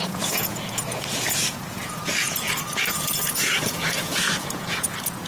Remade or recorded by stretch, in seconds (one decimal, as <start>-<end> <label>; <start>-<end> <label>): 0.0-5.3 remade

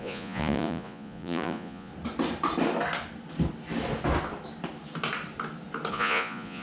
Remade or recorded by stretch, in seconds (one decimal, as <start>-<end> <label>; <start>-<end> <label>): 0.0-1.9 remade; 1.9-5.9 recorded; 5.9-6.6 remade

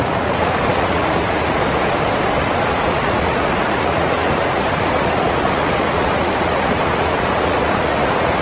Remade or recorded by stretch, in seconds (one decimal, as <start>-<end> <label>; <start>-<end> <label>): 0.0-1.6 remade; 1.6-2.6 recorded; 2.6-8.4 remade

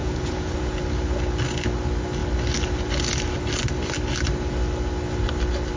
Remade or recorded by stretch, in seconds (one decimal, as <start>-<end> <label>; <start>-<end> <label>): 0.0-0.8 remade; 0.8-5.8 recorded

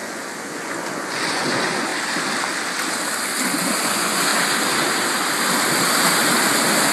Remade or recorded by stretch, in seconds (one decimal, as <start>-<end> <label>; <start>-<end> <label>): 0.0-1.9 remade; 1.9-3.8 recorded; 3.8-4.3 remade; 4.3-6.9 recorded

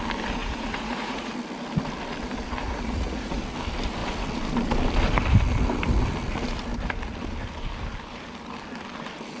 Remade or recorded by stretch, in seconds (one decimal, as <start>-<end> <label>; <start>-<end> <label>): 0.0-0.4 recorded; 0.4-1.3 remade; 1.3-2.6 recorded; 2.6-3.4 remade; 3.4-9.4 recorded

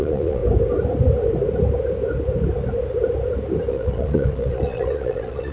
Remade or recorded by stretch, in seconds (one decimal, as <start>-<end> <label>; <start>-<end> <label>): 0.0-0.4 remade; 0.4-3.7 recorded; 3.7-5.5 remade

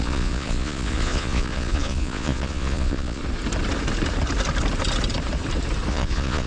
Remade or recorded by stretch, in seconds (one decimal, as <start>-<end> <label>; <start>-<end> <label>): 0.0-3.2 remade; 3.2-5.9 recorded; 5.9-6.5 remade